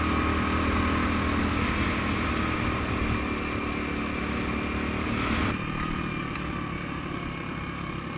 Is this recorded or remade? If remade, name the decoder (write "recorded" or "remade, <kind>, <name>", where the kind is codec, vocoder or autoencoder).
recorded